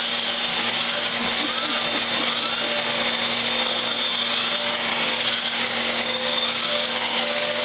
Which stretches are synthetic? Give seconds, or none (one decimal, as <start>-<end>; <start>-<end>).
0.5-1.2; 4.9-7.6